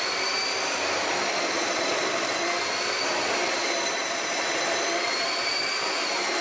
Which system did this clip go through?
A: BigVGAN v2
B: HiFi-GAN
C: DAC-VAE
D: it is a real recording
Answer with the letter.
A